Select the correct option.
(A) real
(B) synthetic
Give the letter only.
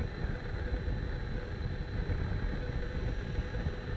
A